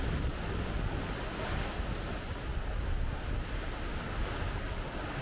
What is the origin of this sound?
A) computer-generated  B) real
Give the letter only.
B